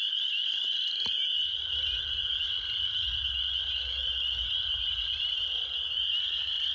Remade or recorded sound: recorded